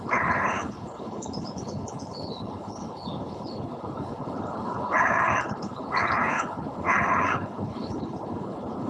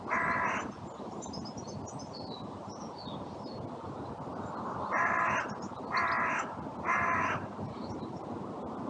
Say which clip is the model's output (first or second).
first